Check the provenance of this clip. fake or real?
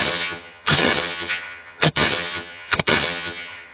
fake